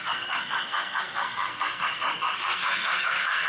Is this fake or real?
fake